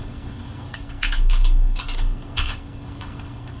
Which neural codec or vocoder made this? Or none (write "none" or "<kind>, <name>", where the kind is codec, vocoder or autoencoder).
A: codec, SNAC